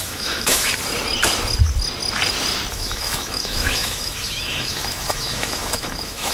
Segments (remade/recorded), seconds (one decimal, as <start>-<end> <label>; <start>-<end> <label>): 0.0-0.7 remade; 0.7-2.7 recorded; 2.7-6.3 remade